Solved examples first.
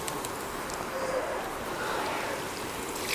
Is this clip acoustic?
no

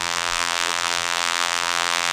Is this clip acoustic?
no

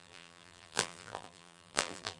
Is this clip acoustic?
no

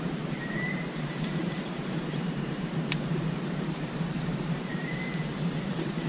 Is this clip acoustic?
no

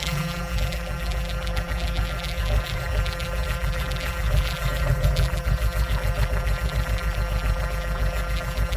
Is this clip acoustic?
no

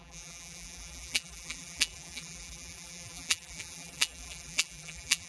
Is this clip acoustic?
no